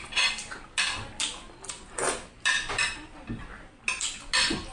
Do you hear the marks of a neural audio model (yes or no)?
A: no